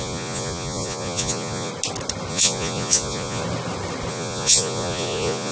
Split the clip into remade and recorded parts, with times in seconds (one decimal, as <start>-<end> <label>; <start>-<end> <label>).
0.0-1.7 remade; 1.7-2.3 recorded; 2.3-3.4 remade; 3.4-4.1 recorded; 4.1-5.5 remade